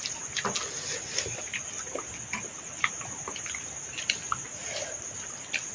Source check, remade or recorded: recorded